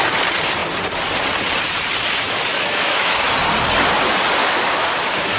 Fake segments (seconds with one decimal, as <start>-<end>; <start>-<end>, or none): 2.5-3.2; 4.4-5.4